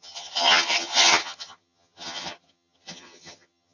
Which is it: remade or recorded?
remade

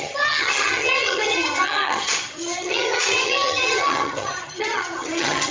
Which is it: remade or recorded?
remade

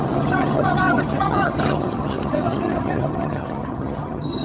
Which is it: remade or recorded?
remade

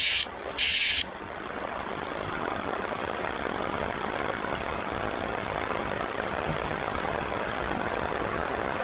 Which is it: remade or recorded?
remade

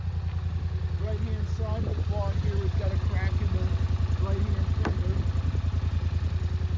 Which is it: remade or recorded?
recorded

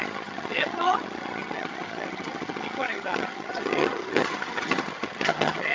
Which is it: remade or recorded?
remade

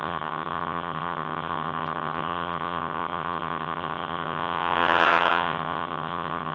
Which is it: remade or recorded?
remade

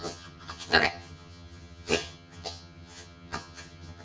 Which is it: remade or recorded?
remade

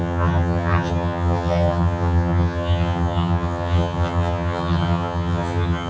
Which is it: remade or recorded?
remade